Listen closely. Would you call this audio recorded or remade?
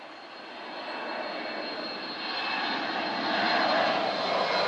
recorded